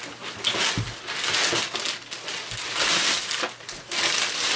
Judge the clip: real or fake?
real